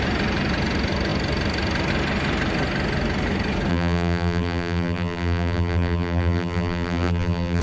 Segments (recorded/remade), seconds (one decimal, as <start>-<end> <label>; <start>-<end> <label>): 0.0-3.7 recorded; 3.7-7.6 remade